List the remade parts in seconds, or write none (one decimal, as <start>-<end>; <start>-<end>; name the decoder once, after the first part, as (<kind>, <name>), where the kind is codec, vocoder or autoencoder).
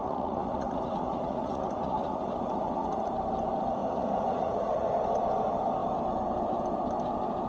0.0-3.1 (vocoder, Vocos); 3.8-4.9